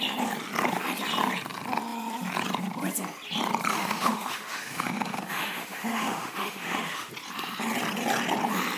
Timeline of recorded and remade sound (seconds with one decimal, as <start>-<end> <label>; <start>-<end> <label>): 0.0-3.7 recorded; 3.7-7.1 remade; 7.1-8.8 recorded

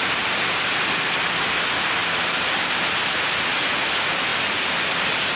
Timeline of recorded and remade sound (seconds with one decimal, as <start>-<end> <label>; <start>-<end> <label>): 0.0-5.4 recorded

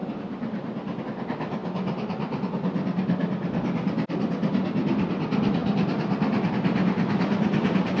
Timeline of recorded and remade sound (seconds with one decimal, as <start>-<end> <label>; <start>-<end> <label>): 0.0-8.0 recorded

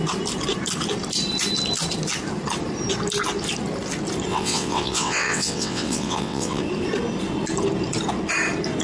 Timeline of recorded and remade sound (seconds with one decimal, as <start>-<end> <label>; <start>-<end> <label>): 0.0-4.3 recorded; 4.3-6.6 remade; 6.6-8.8 recorded

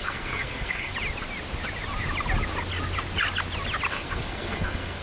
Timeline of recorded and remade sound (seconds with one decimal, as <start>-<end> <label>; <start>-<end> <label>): 0.0-0.9 remade; 0.9-3.9 recorded; 3.9-5.0 remade